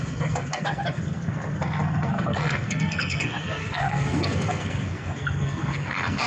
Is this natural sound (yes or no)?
no